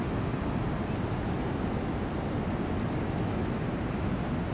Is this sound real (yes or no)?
yes